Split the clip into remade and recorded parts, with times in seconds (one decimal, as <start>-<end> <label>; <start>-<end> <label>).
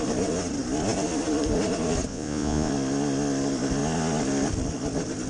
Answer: 0.0-2.1 recorded; 2.1-2.7 remade; 2.7-5.3 recorded